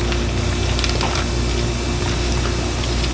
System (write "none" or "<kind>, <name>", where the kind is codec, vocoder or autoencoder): none